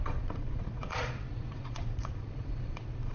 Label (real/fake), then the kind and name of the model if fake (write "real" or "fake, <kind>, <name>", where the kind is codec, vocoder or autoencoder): fake, vocoder, Vocos